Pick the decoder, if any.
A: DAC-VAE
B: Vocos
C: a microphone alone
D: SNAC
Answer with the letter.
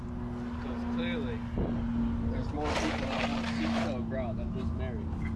C